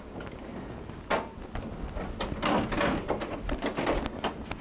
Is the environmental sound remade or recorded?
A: recorded